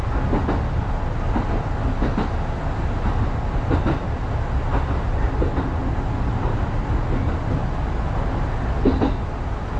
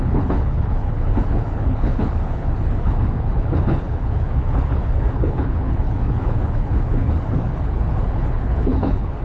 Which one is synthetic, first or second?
second